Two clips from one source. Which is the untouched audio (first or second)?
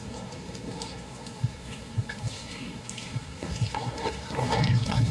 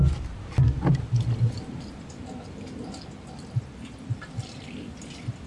second